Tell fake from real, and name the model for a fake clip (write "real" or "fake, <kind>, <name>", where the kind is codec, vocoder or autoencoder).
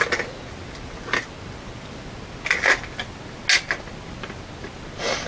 real